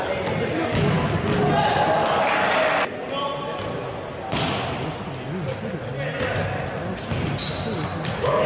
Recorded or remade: recorded